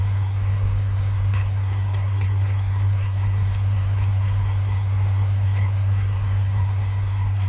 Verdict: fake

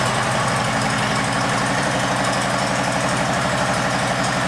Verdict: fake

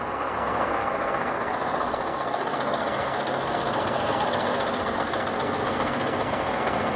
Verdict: fake